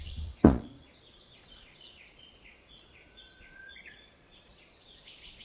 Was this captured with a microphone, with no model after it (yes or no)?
no